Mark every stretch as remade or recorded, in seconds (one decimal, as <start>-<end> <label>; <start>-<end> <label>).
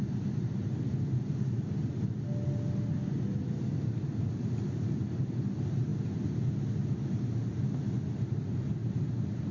0.0-9.5 recorded